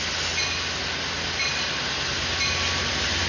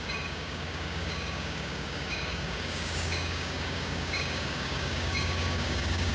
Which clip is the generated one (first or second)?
second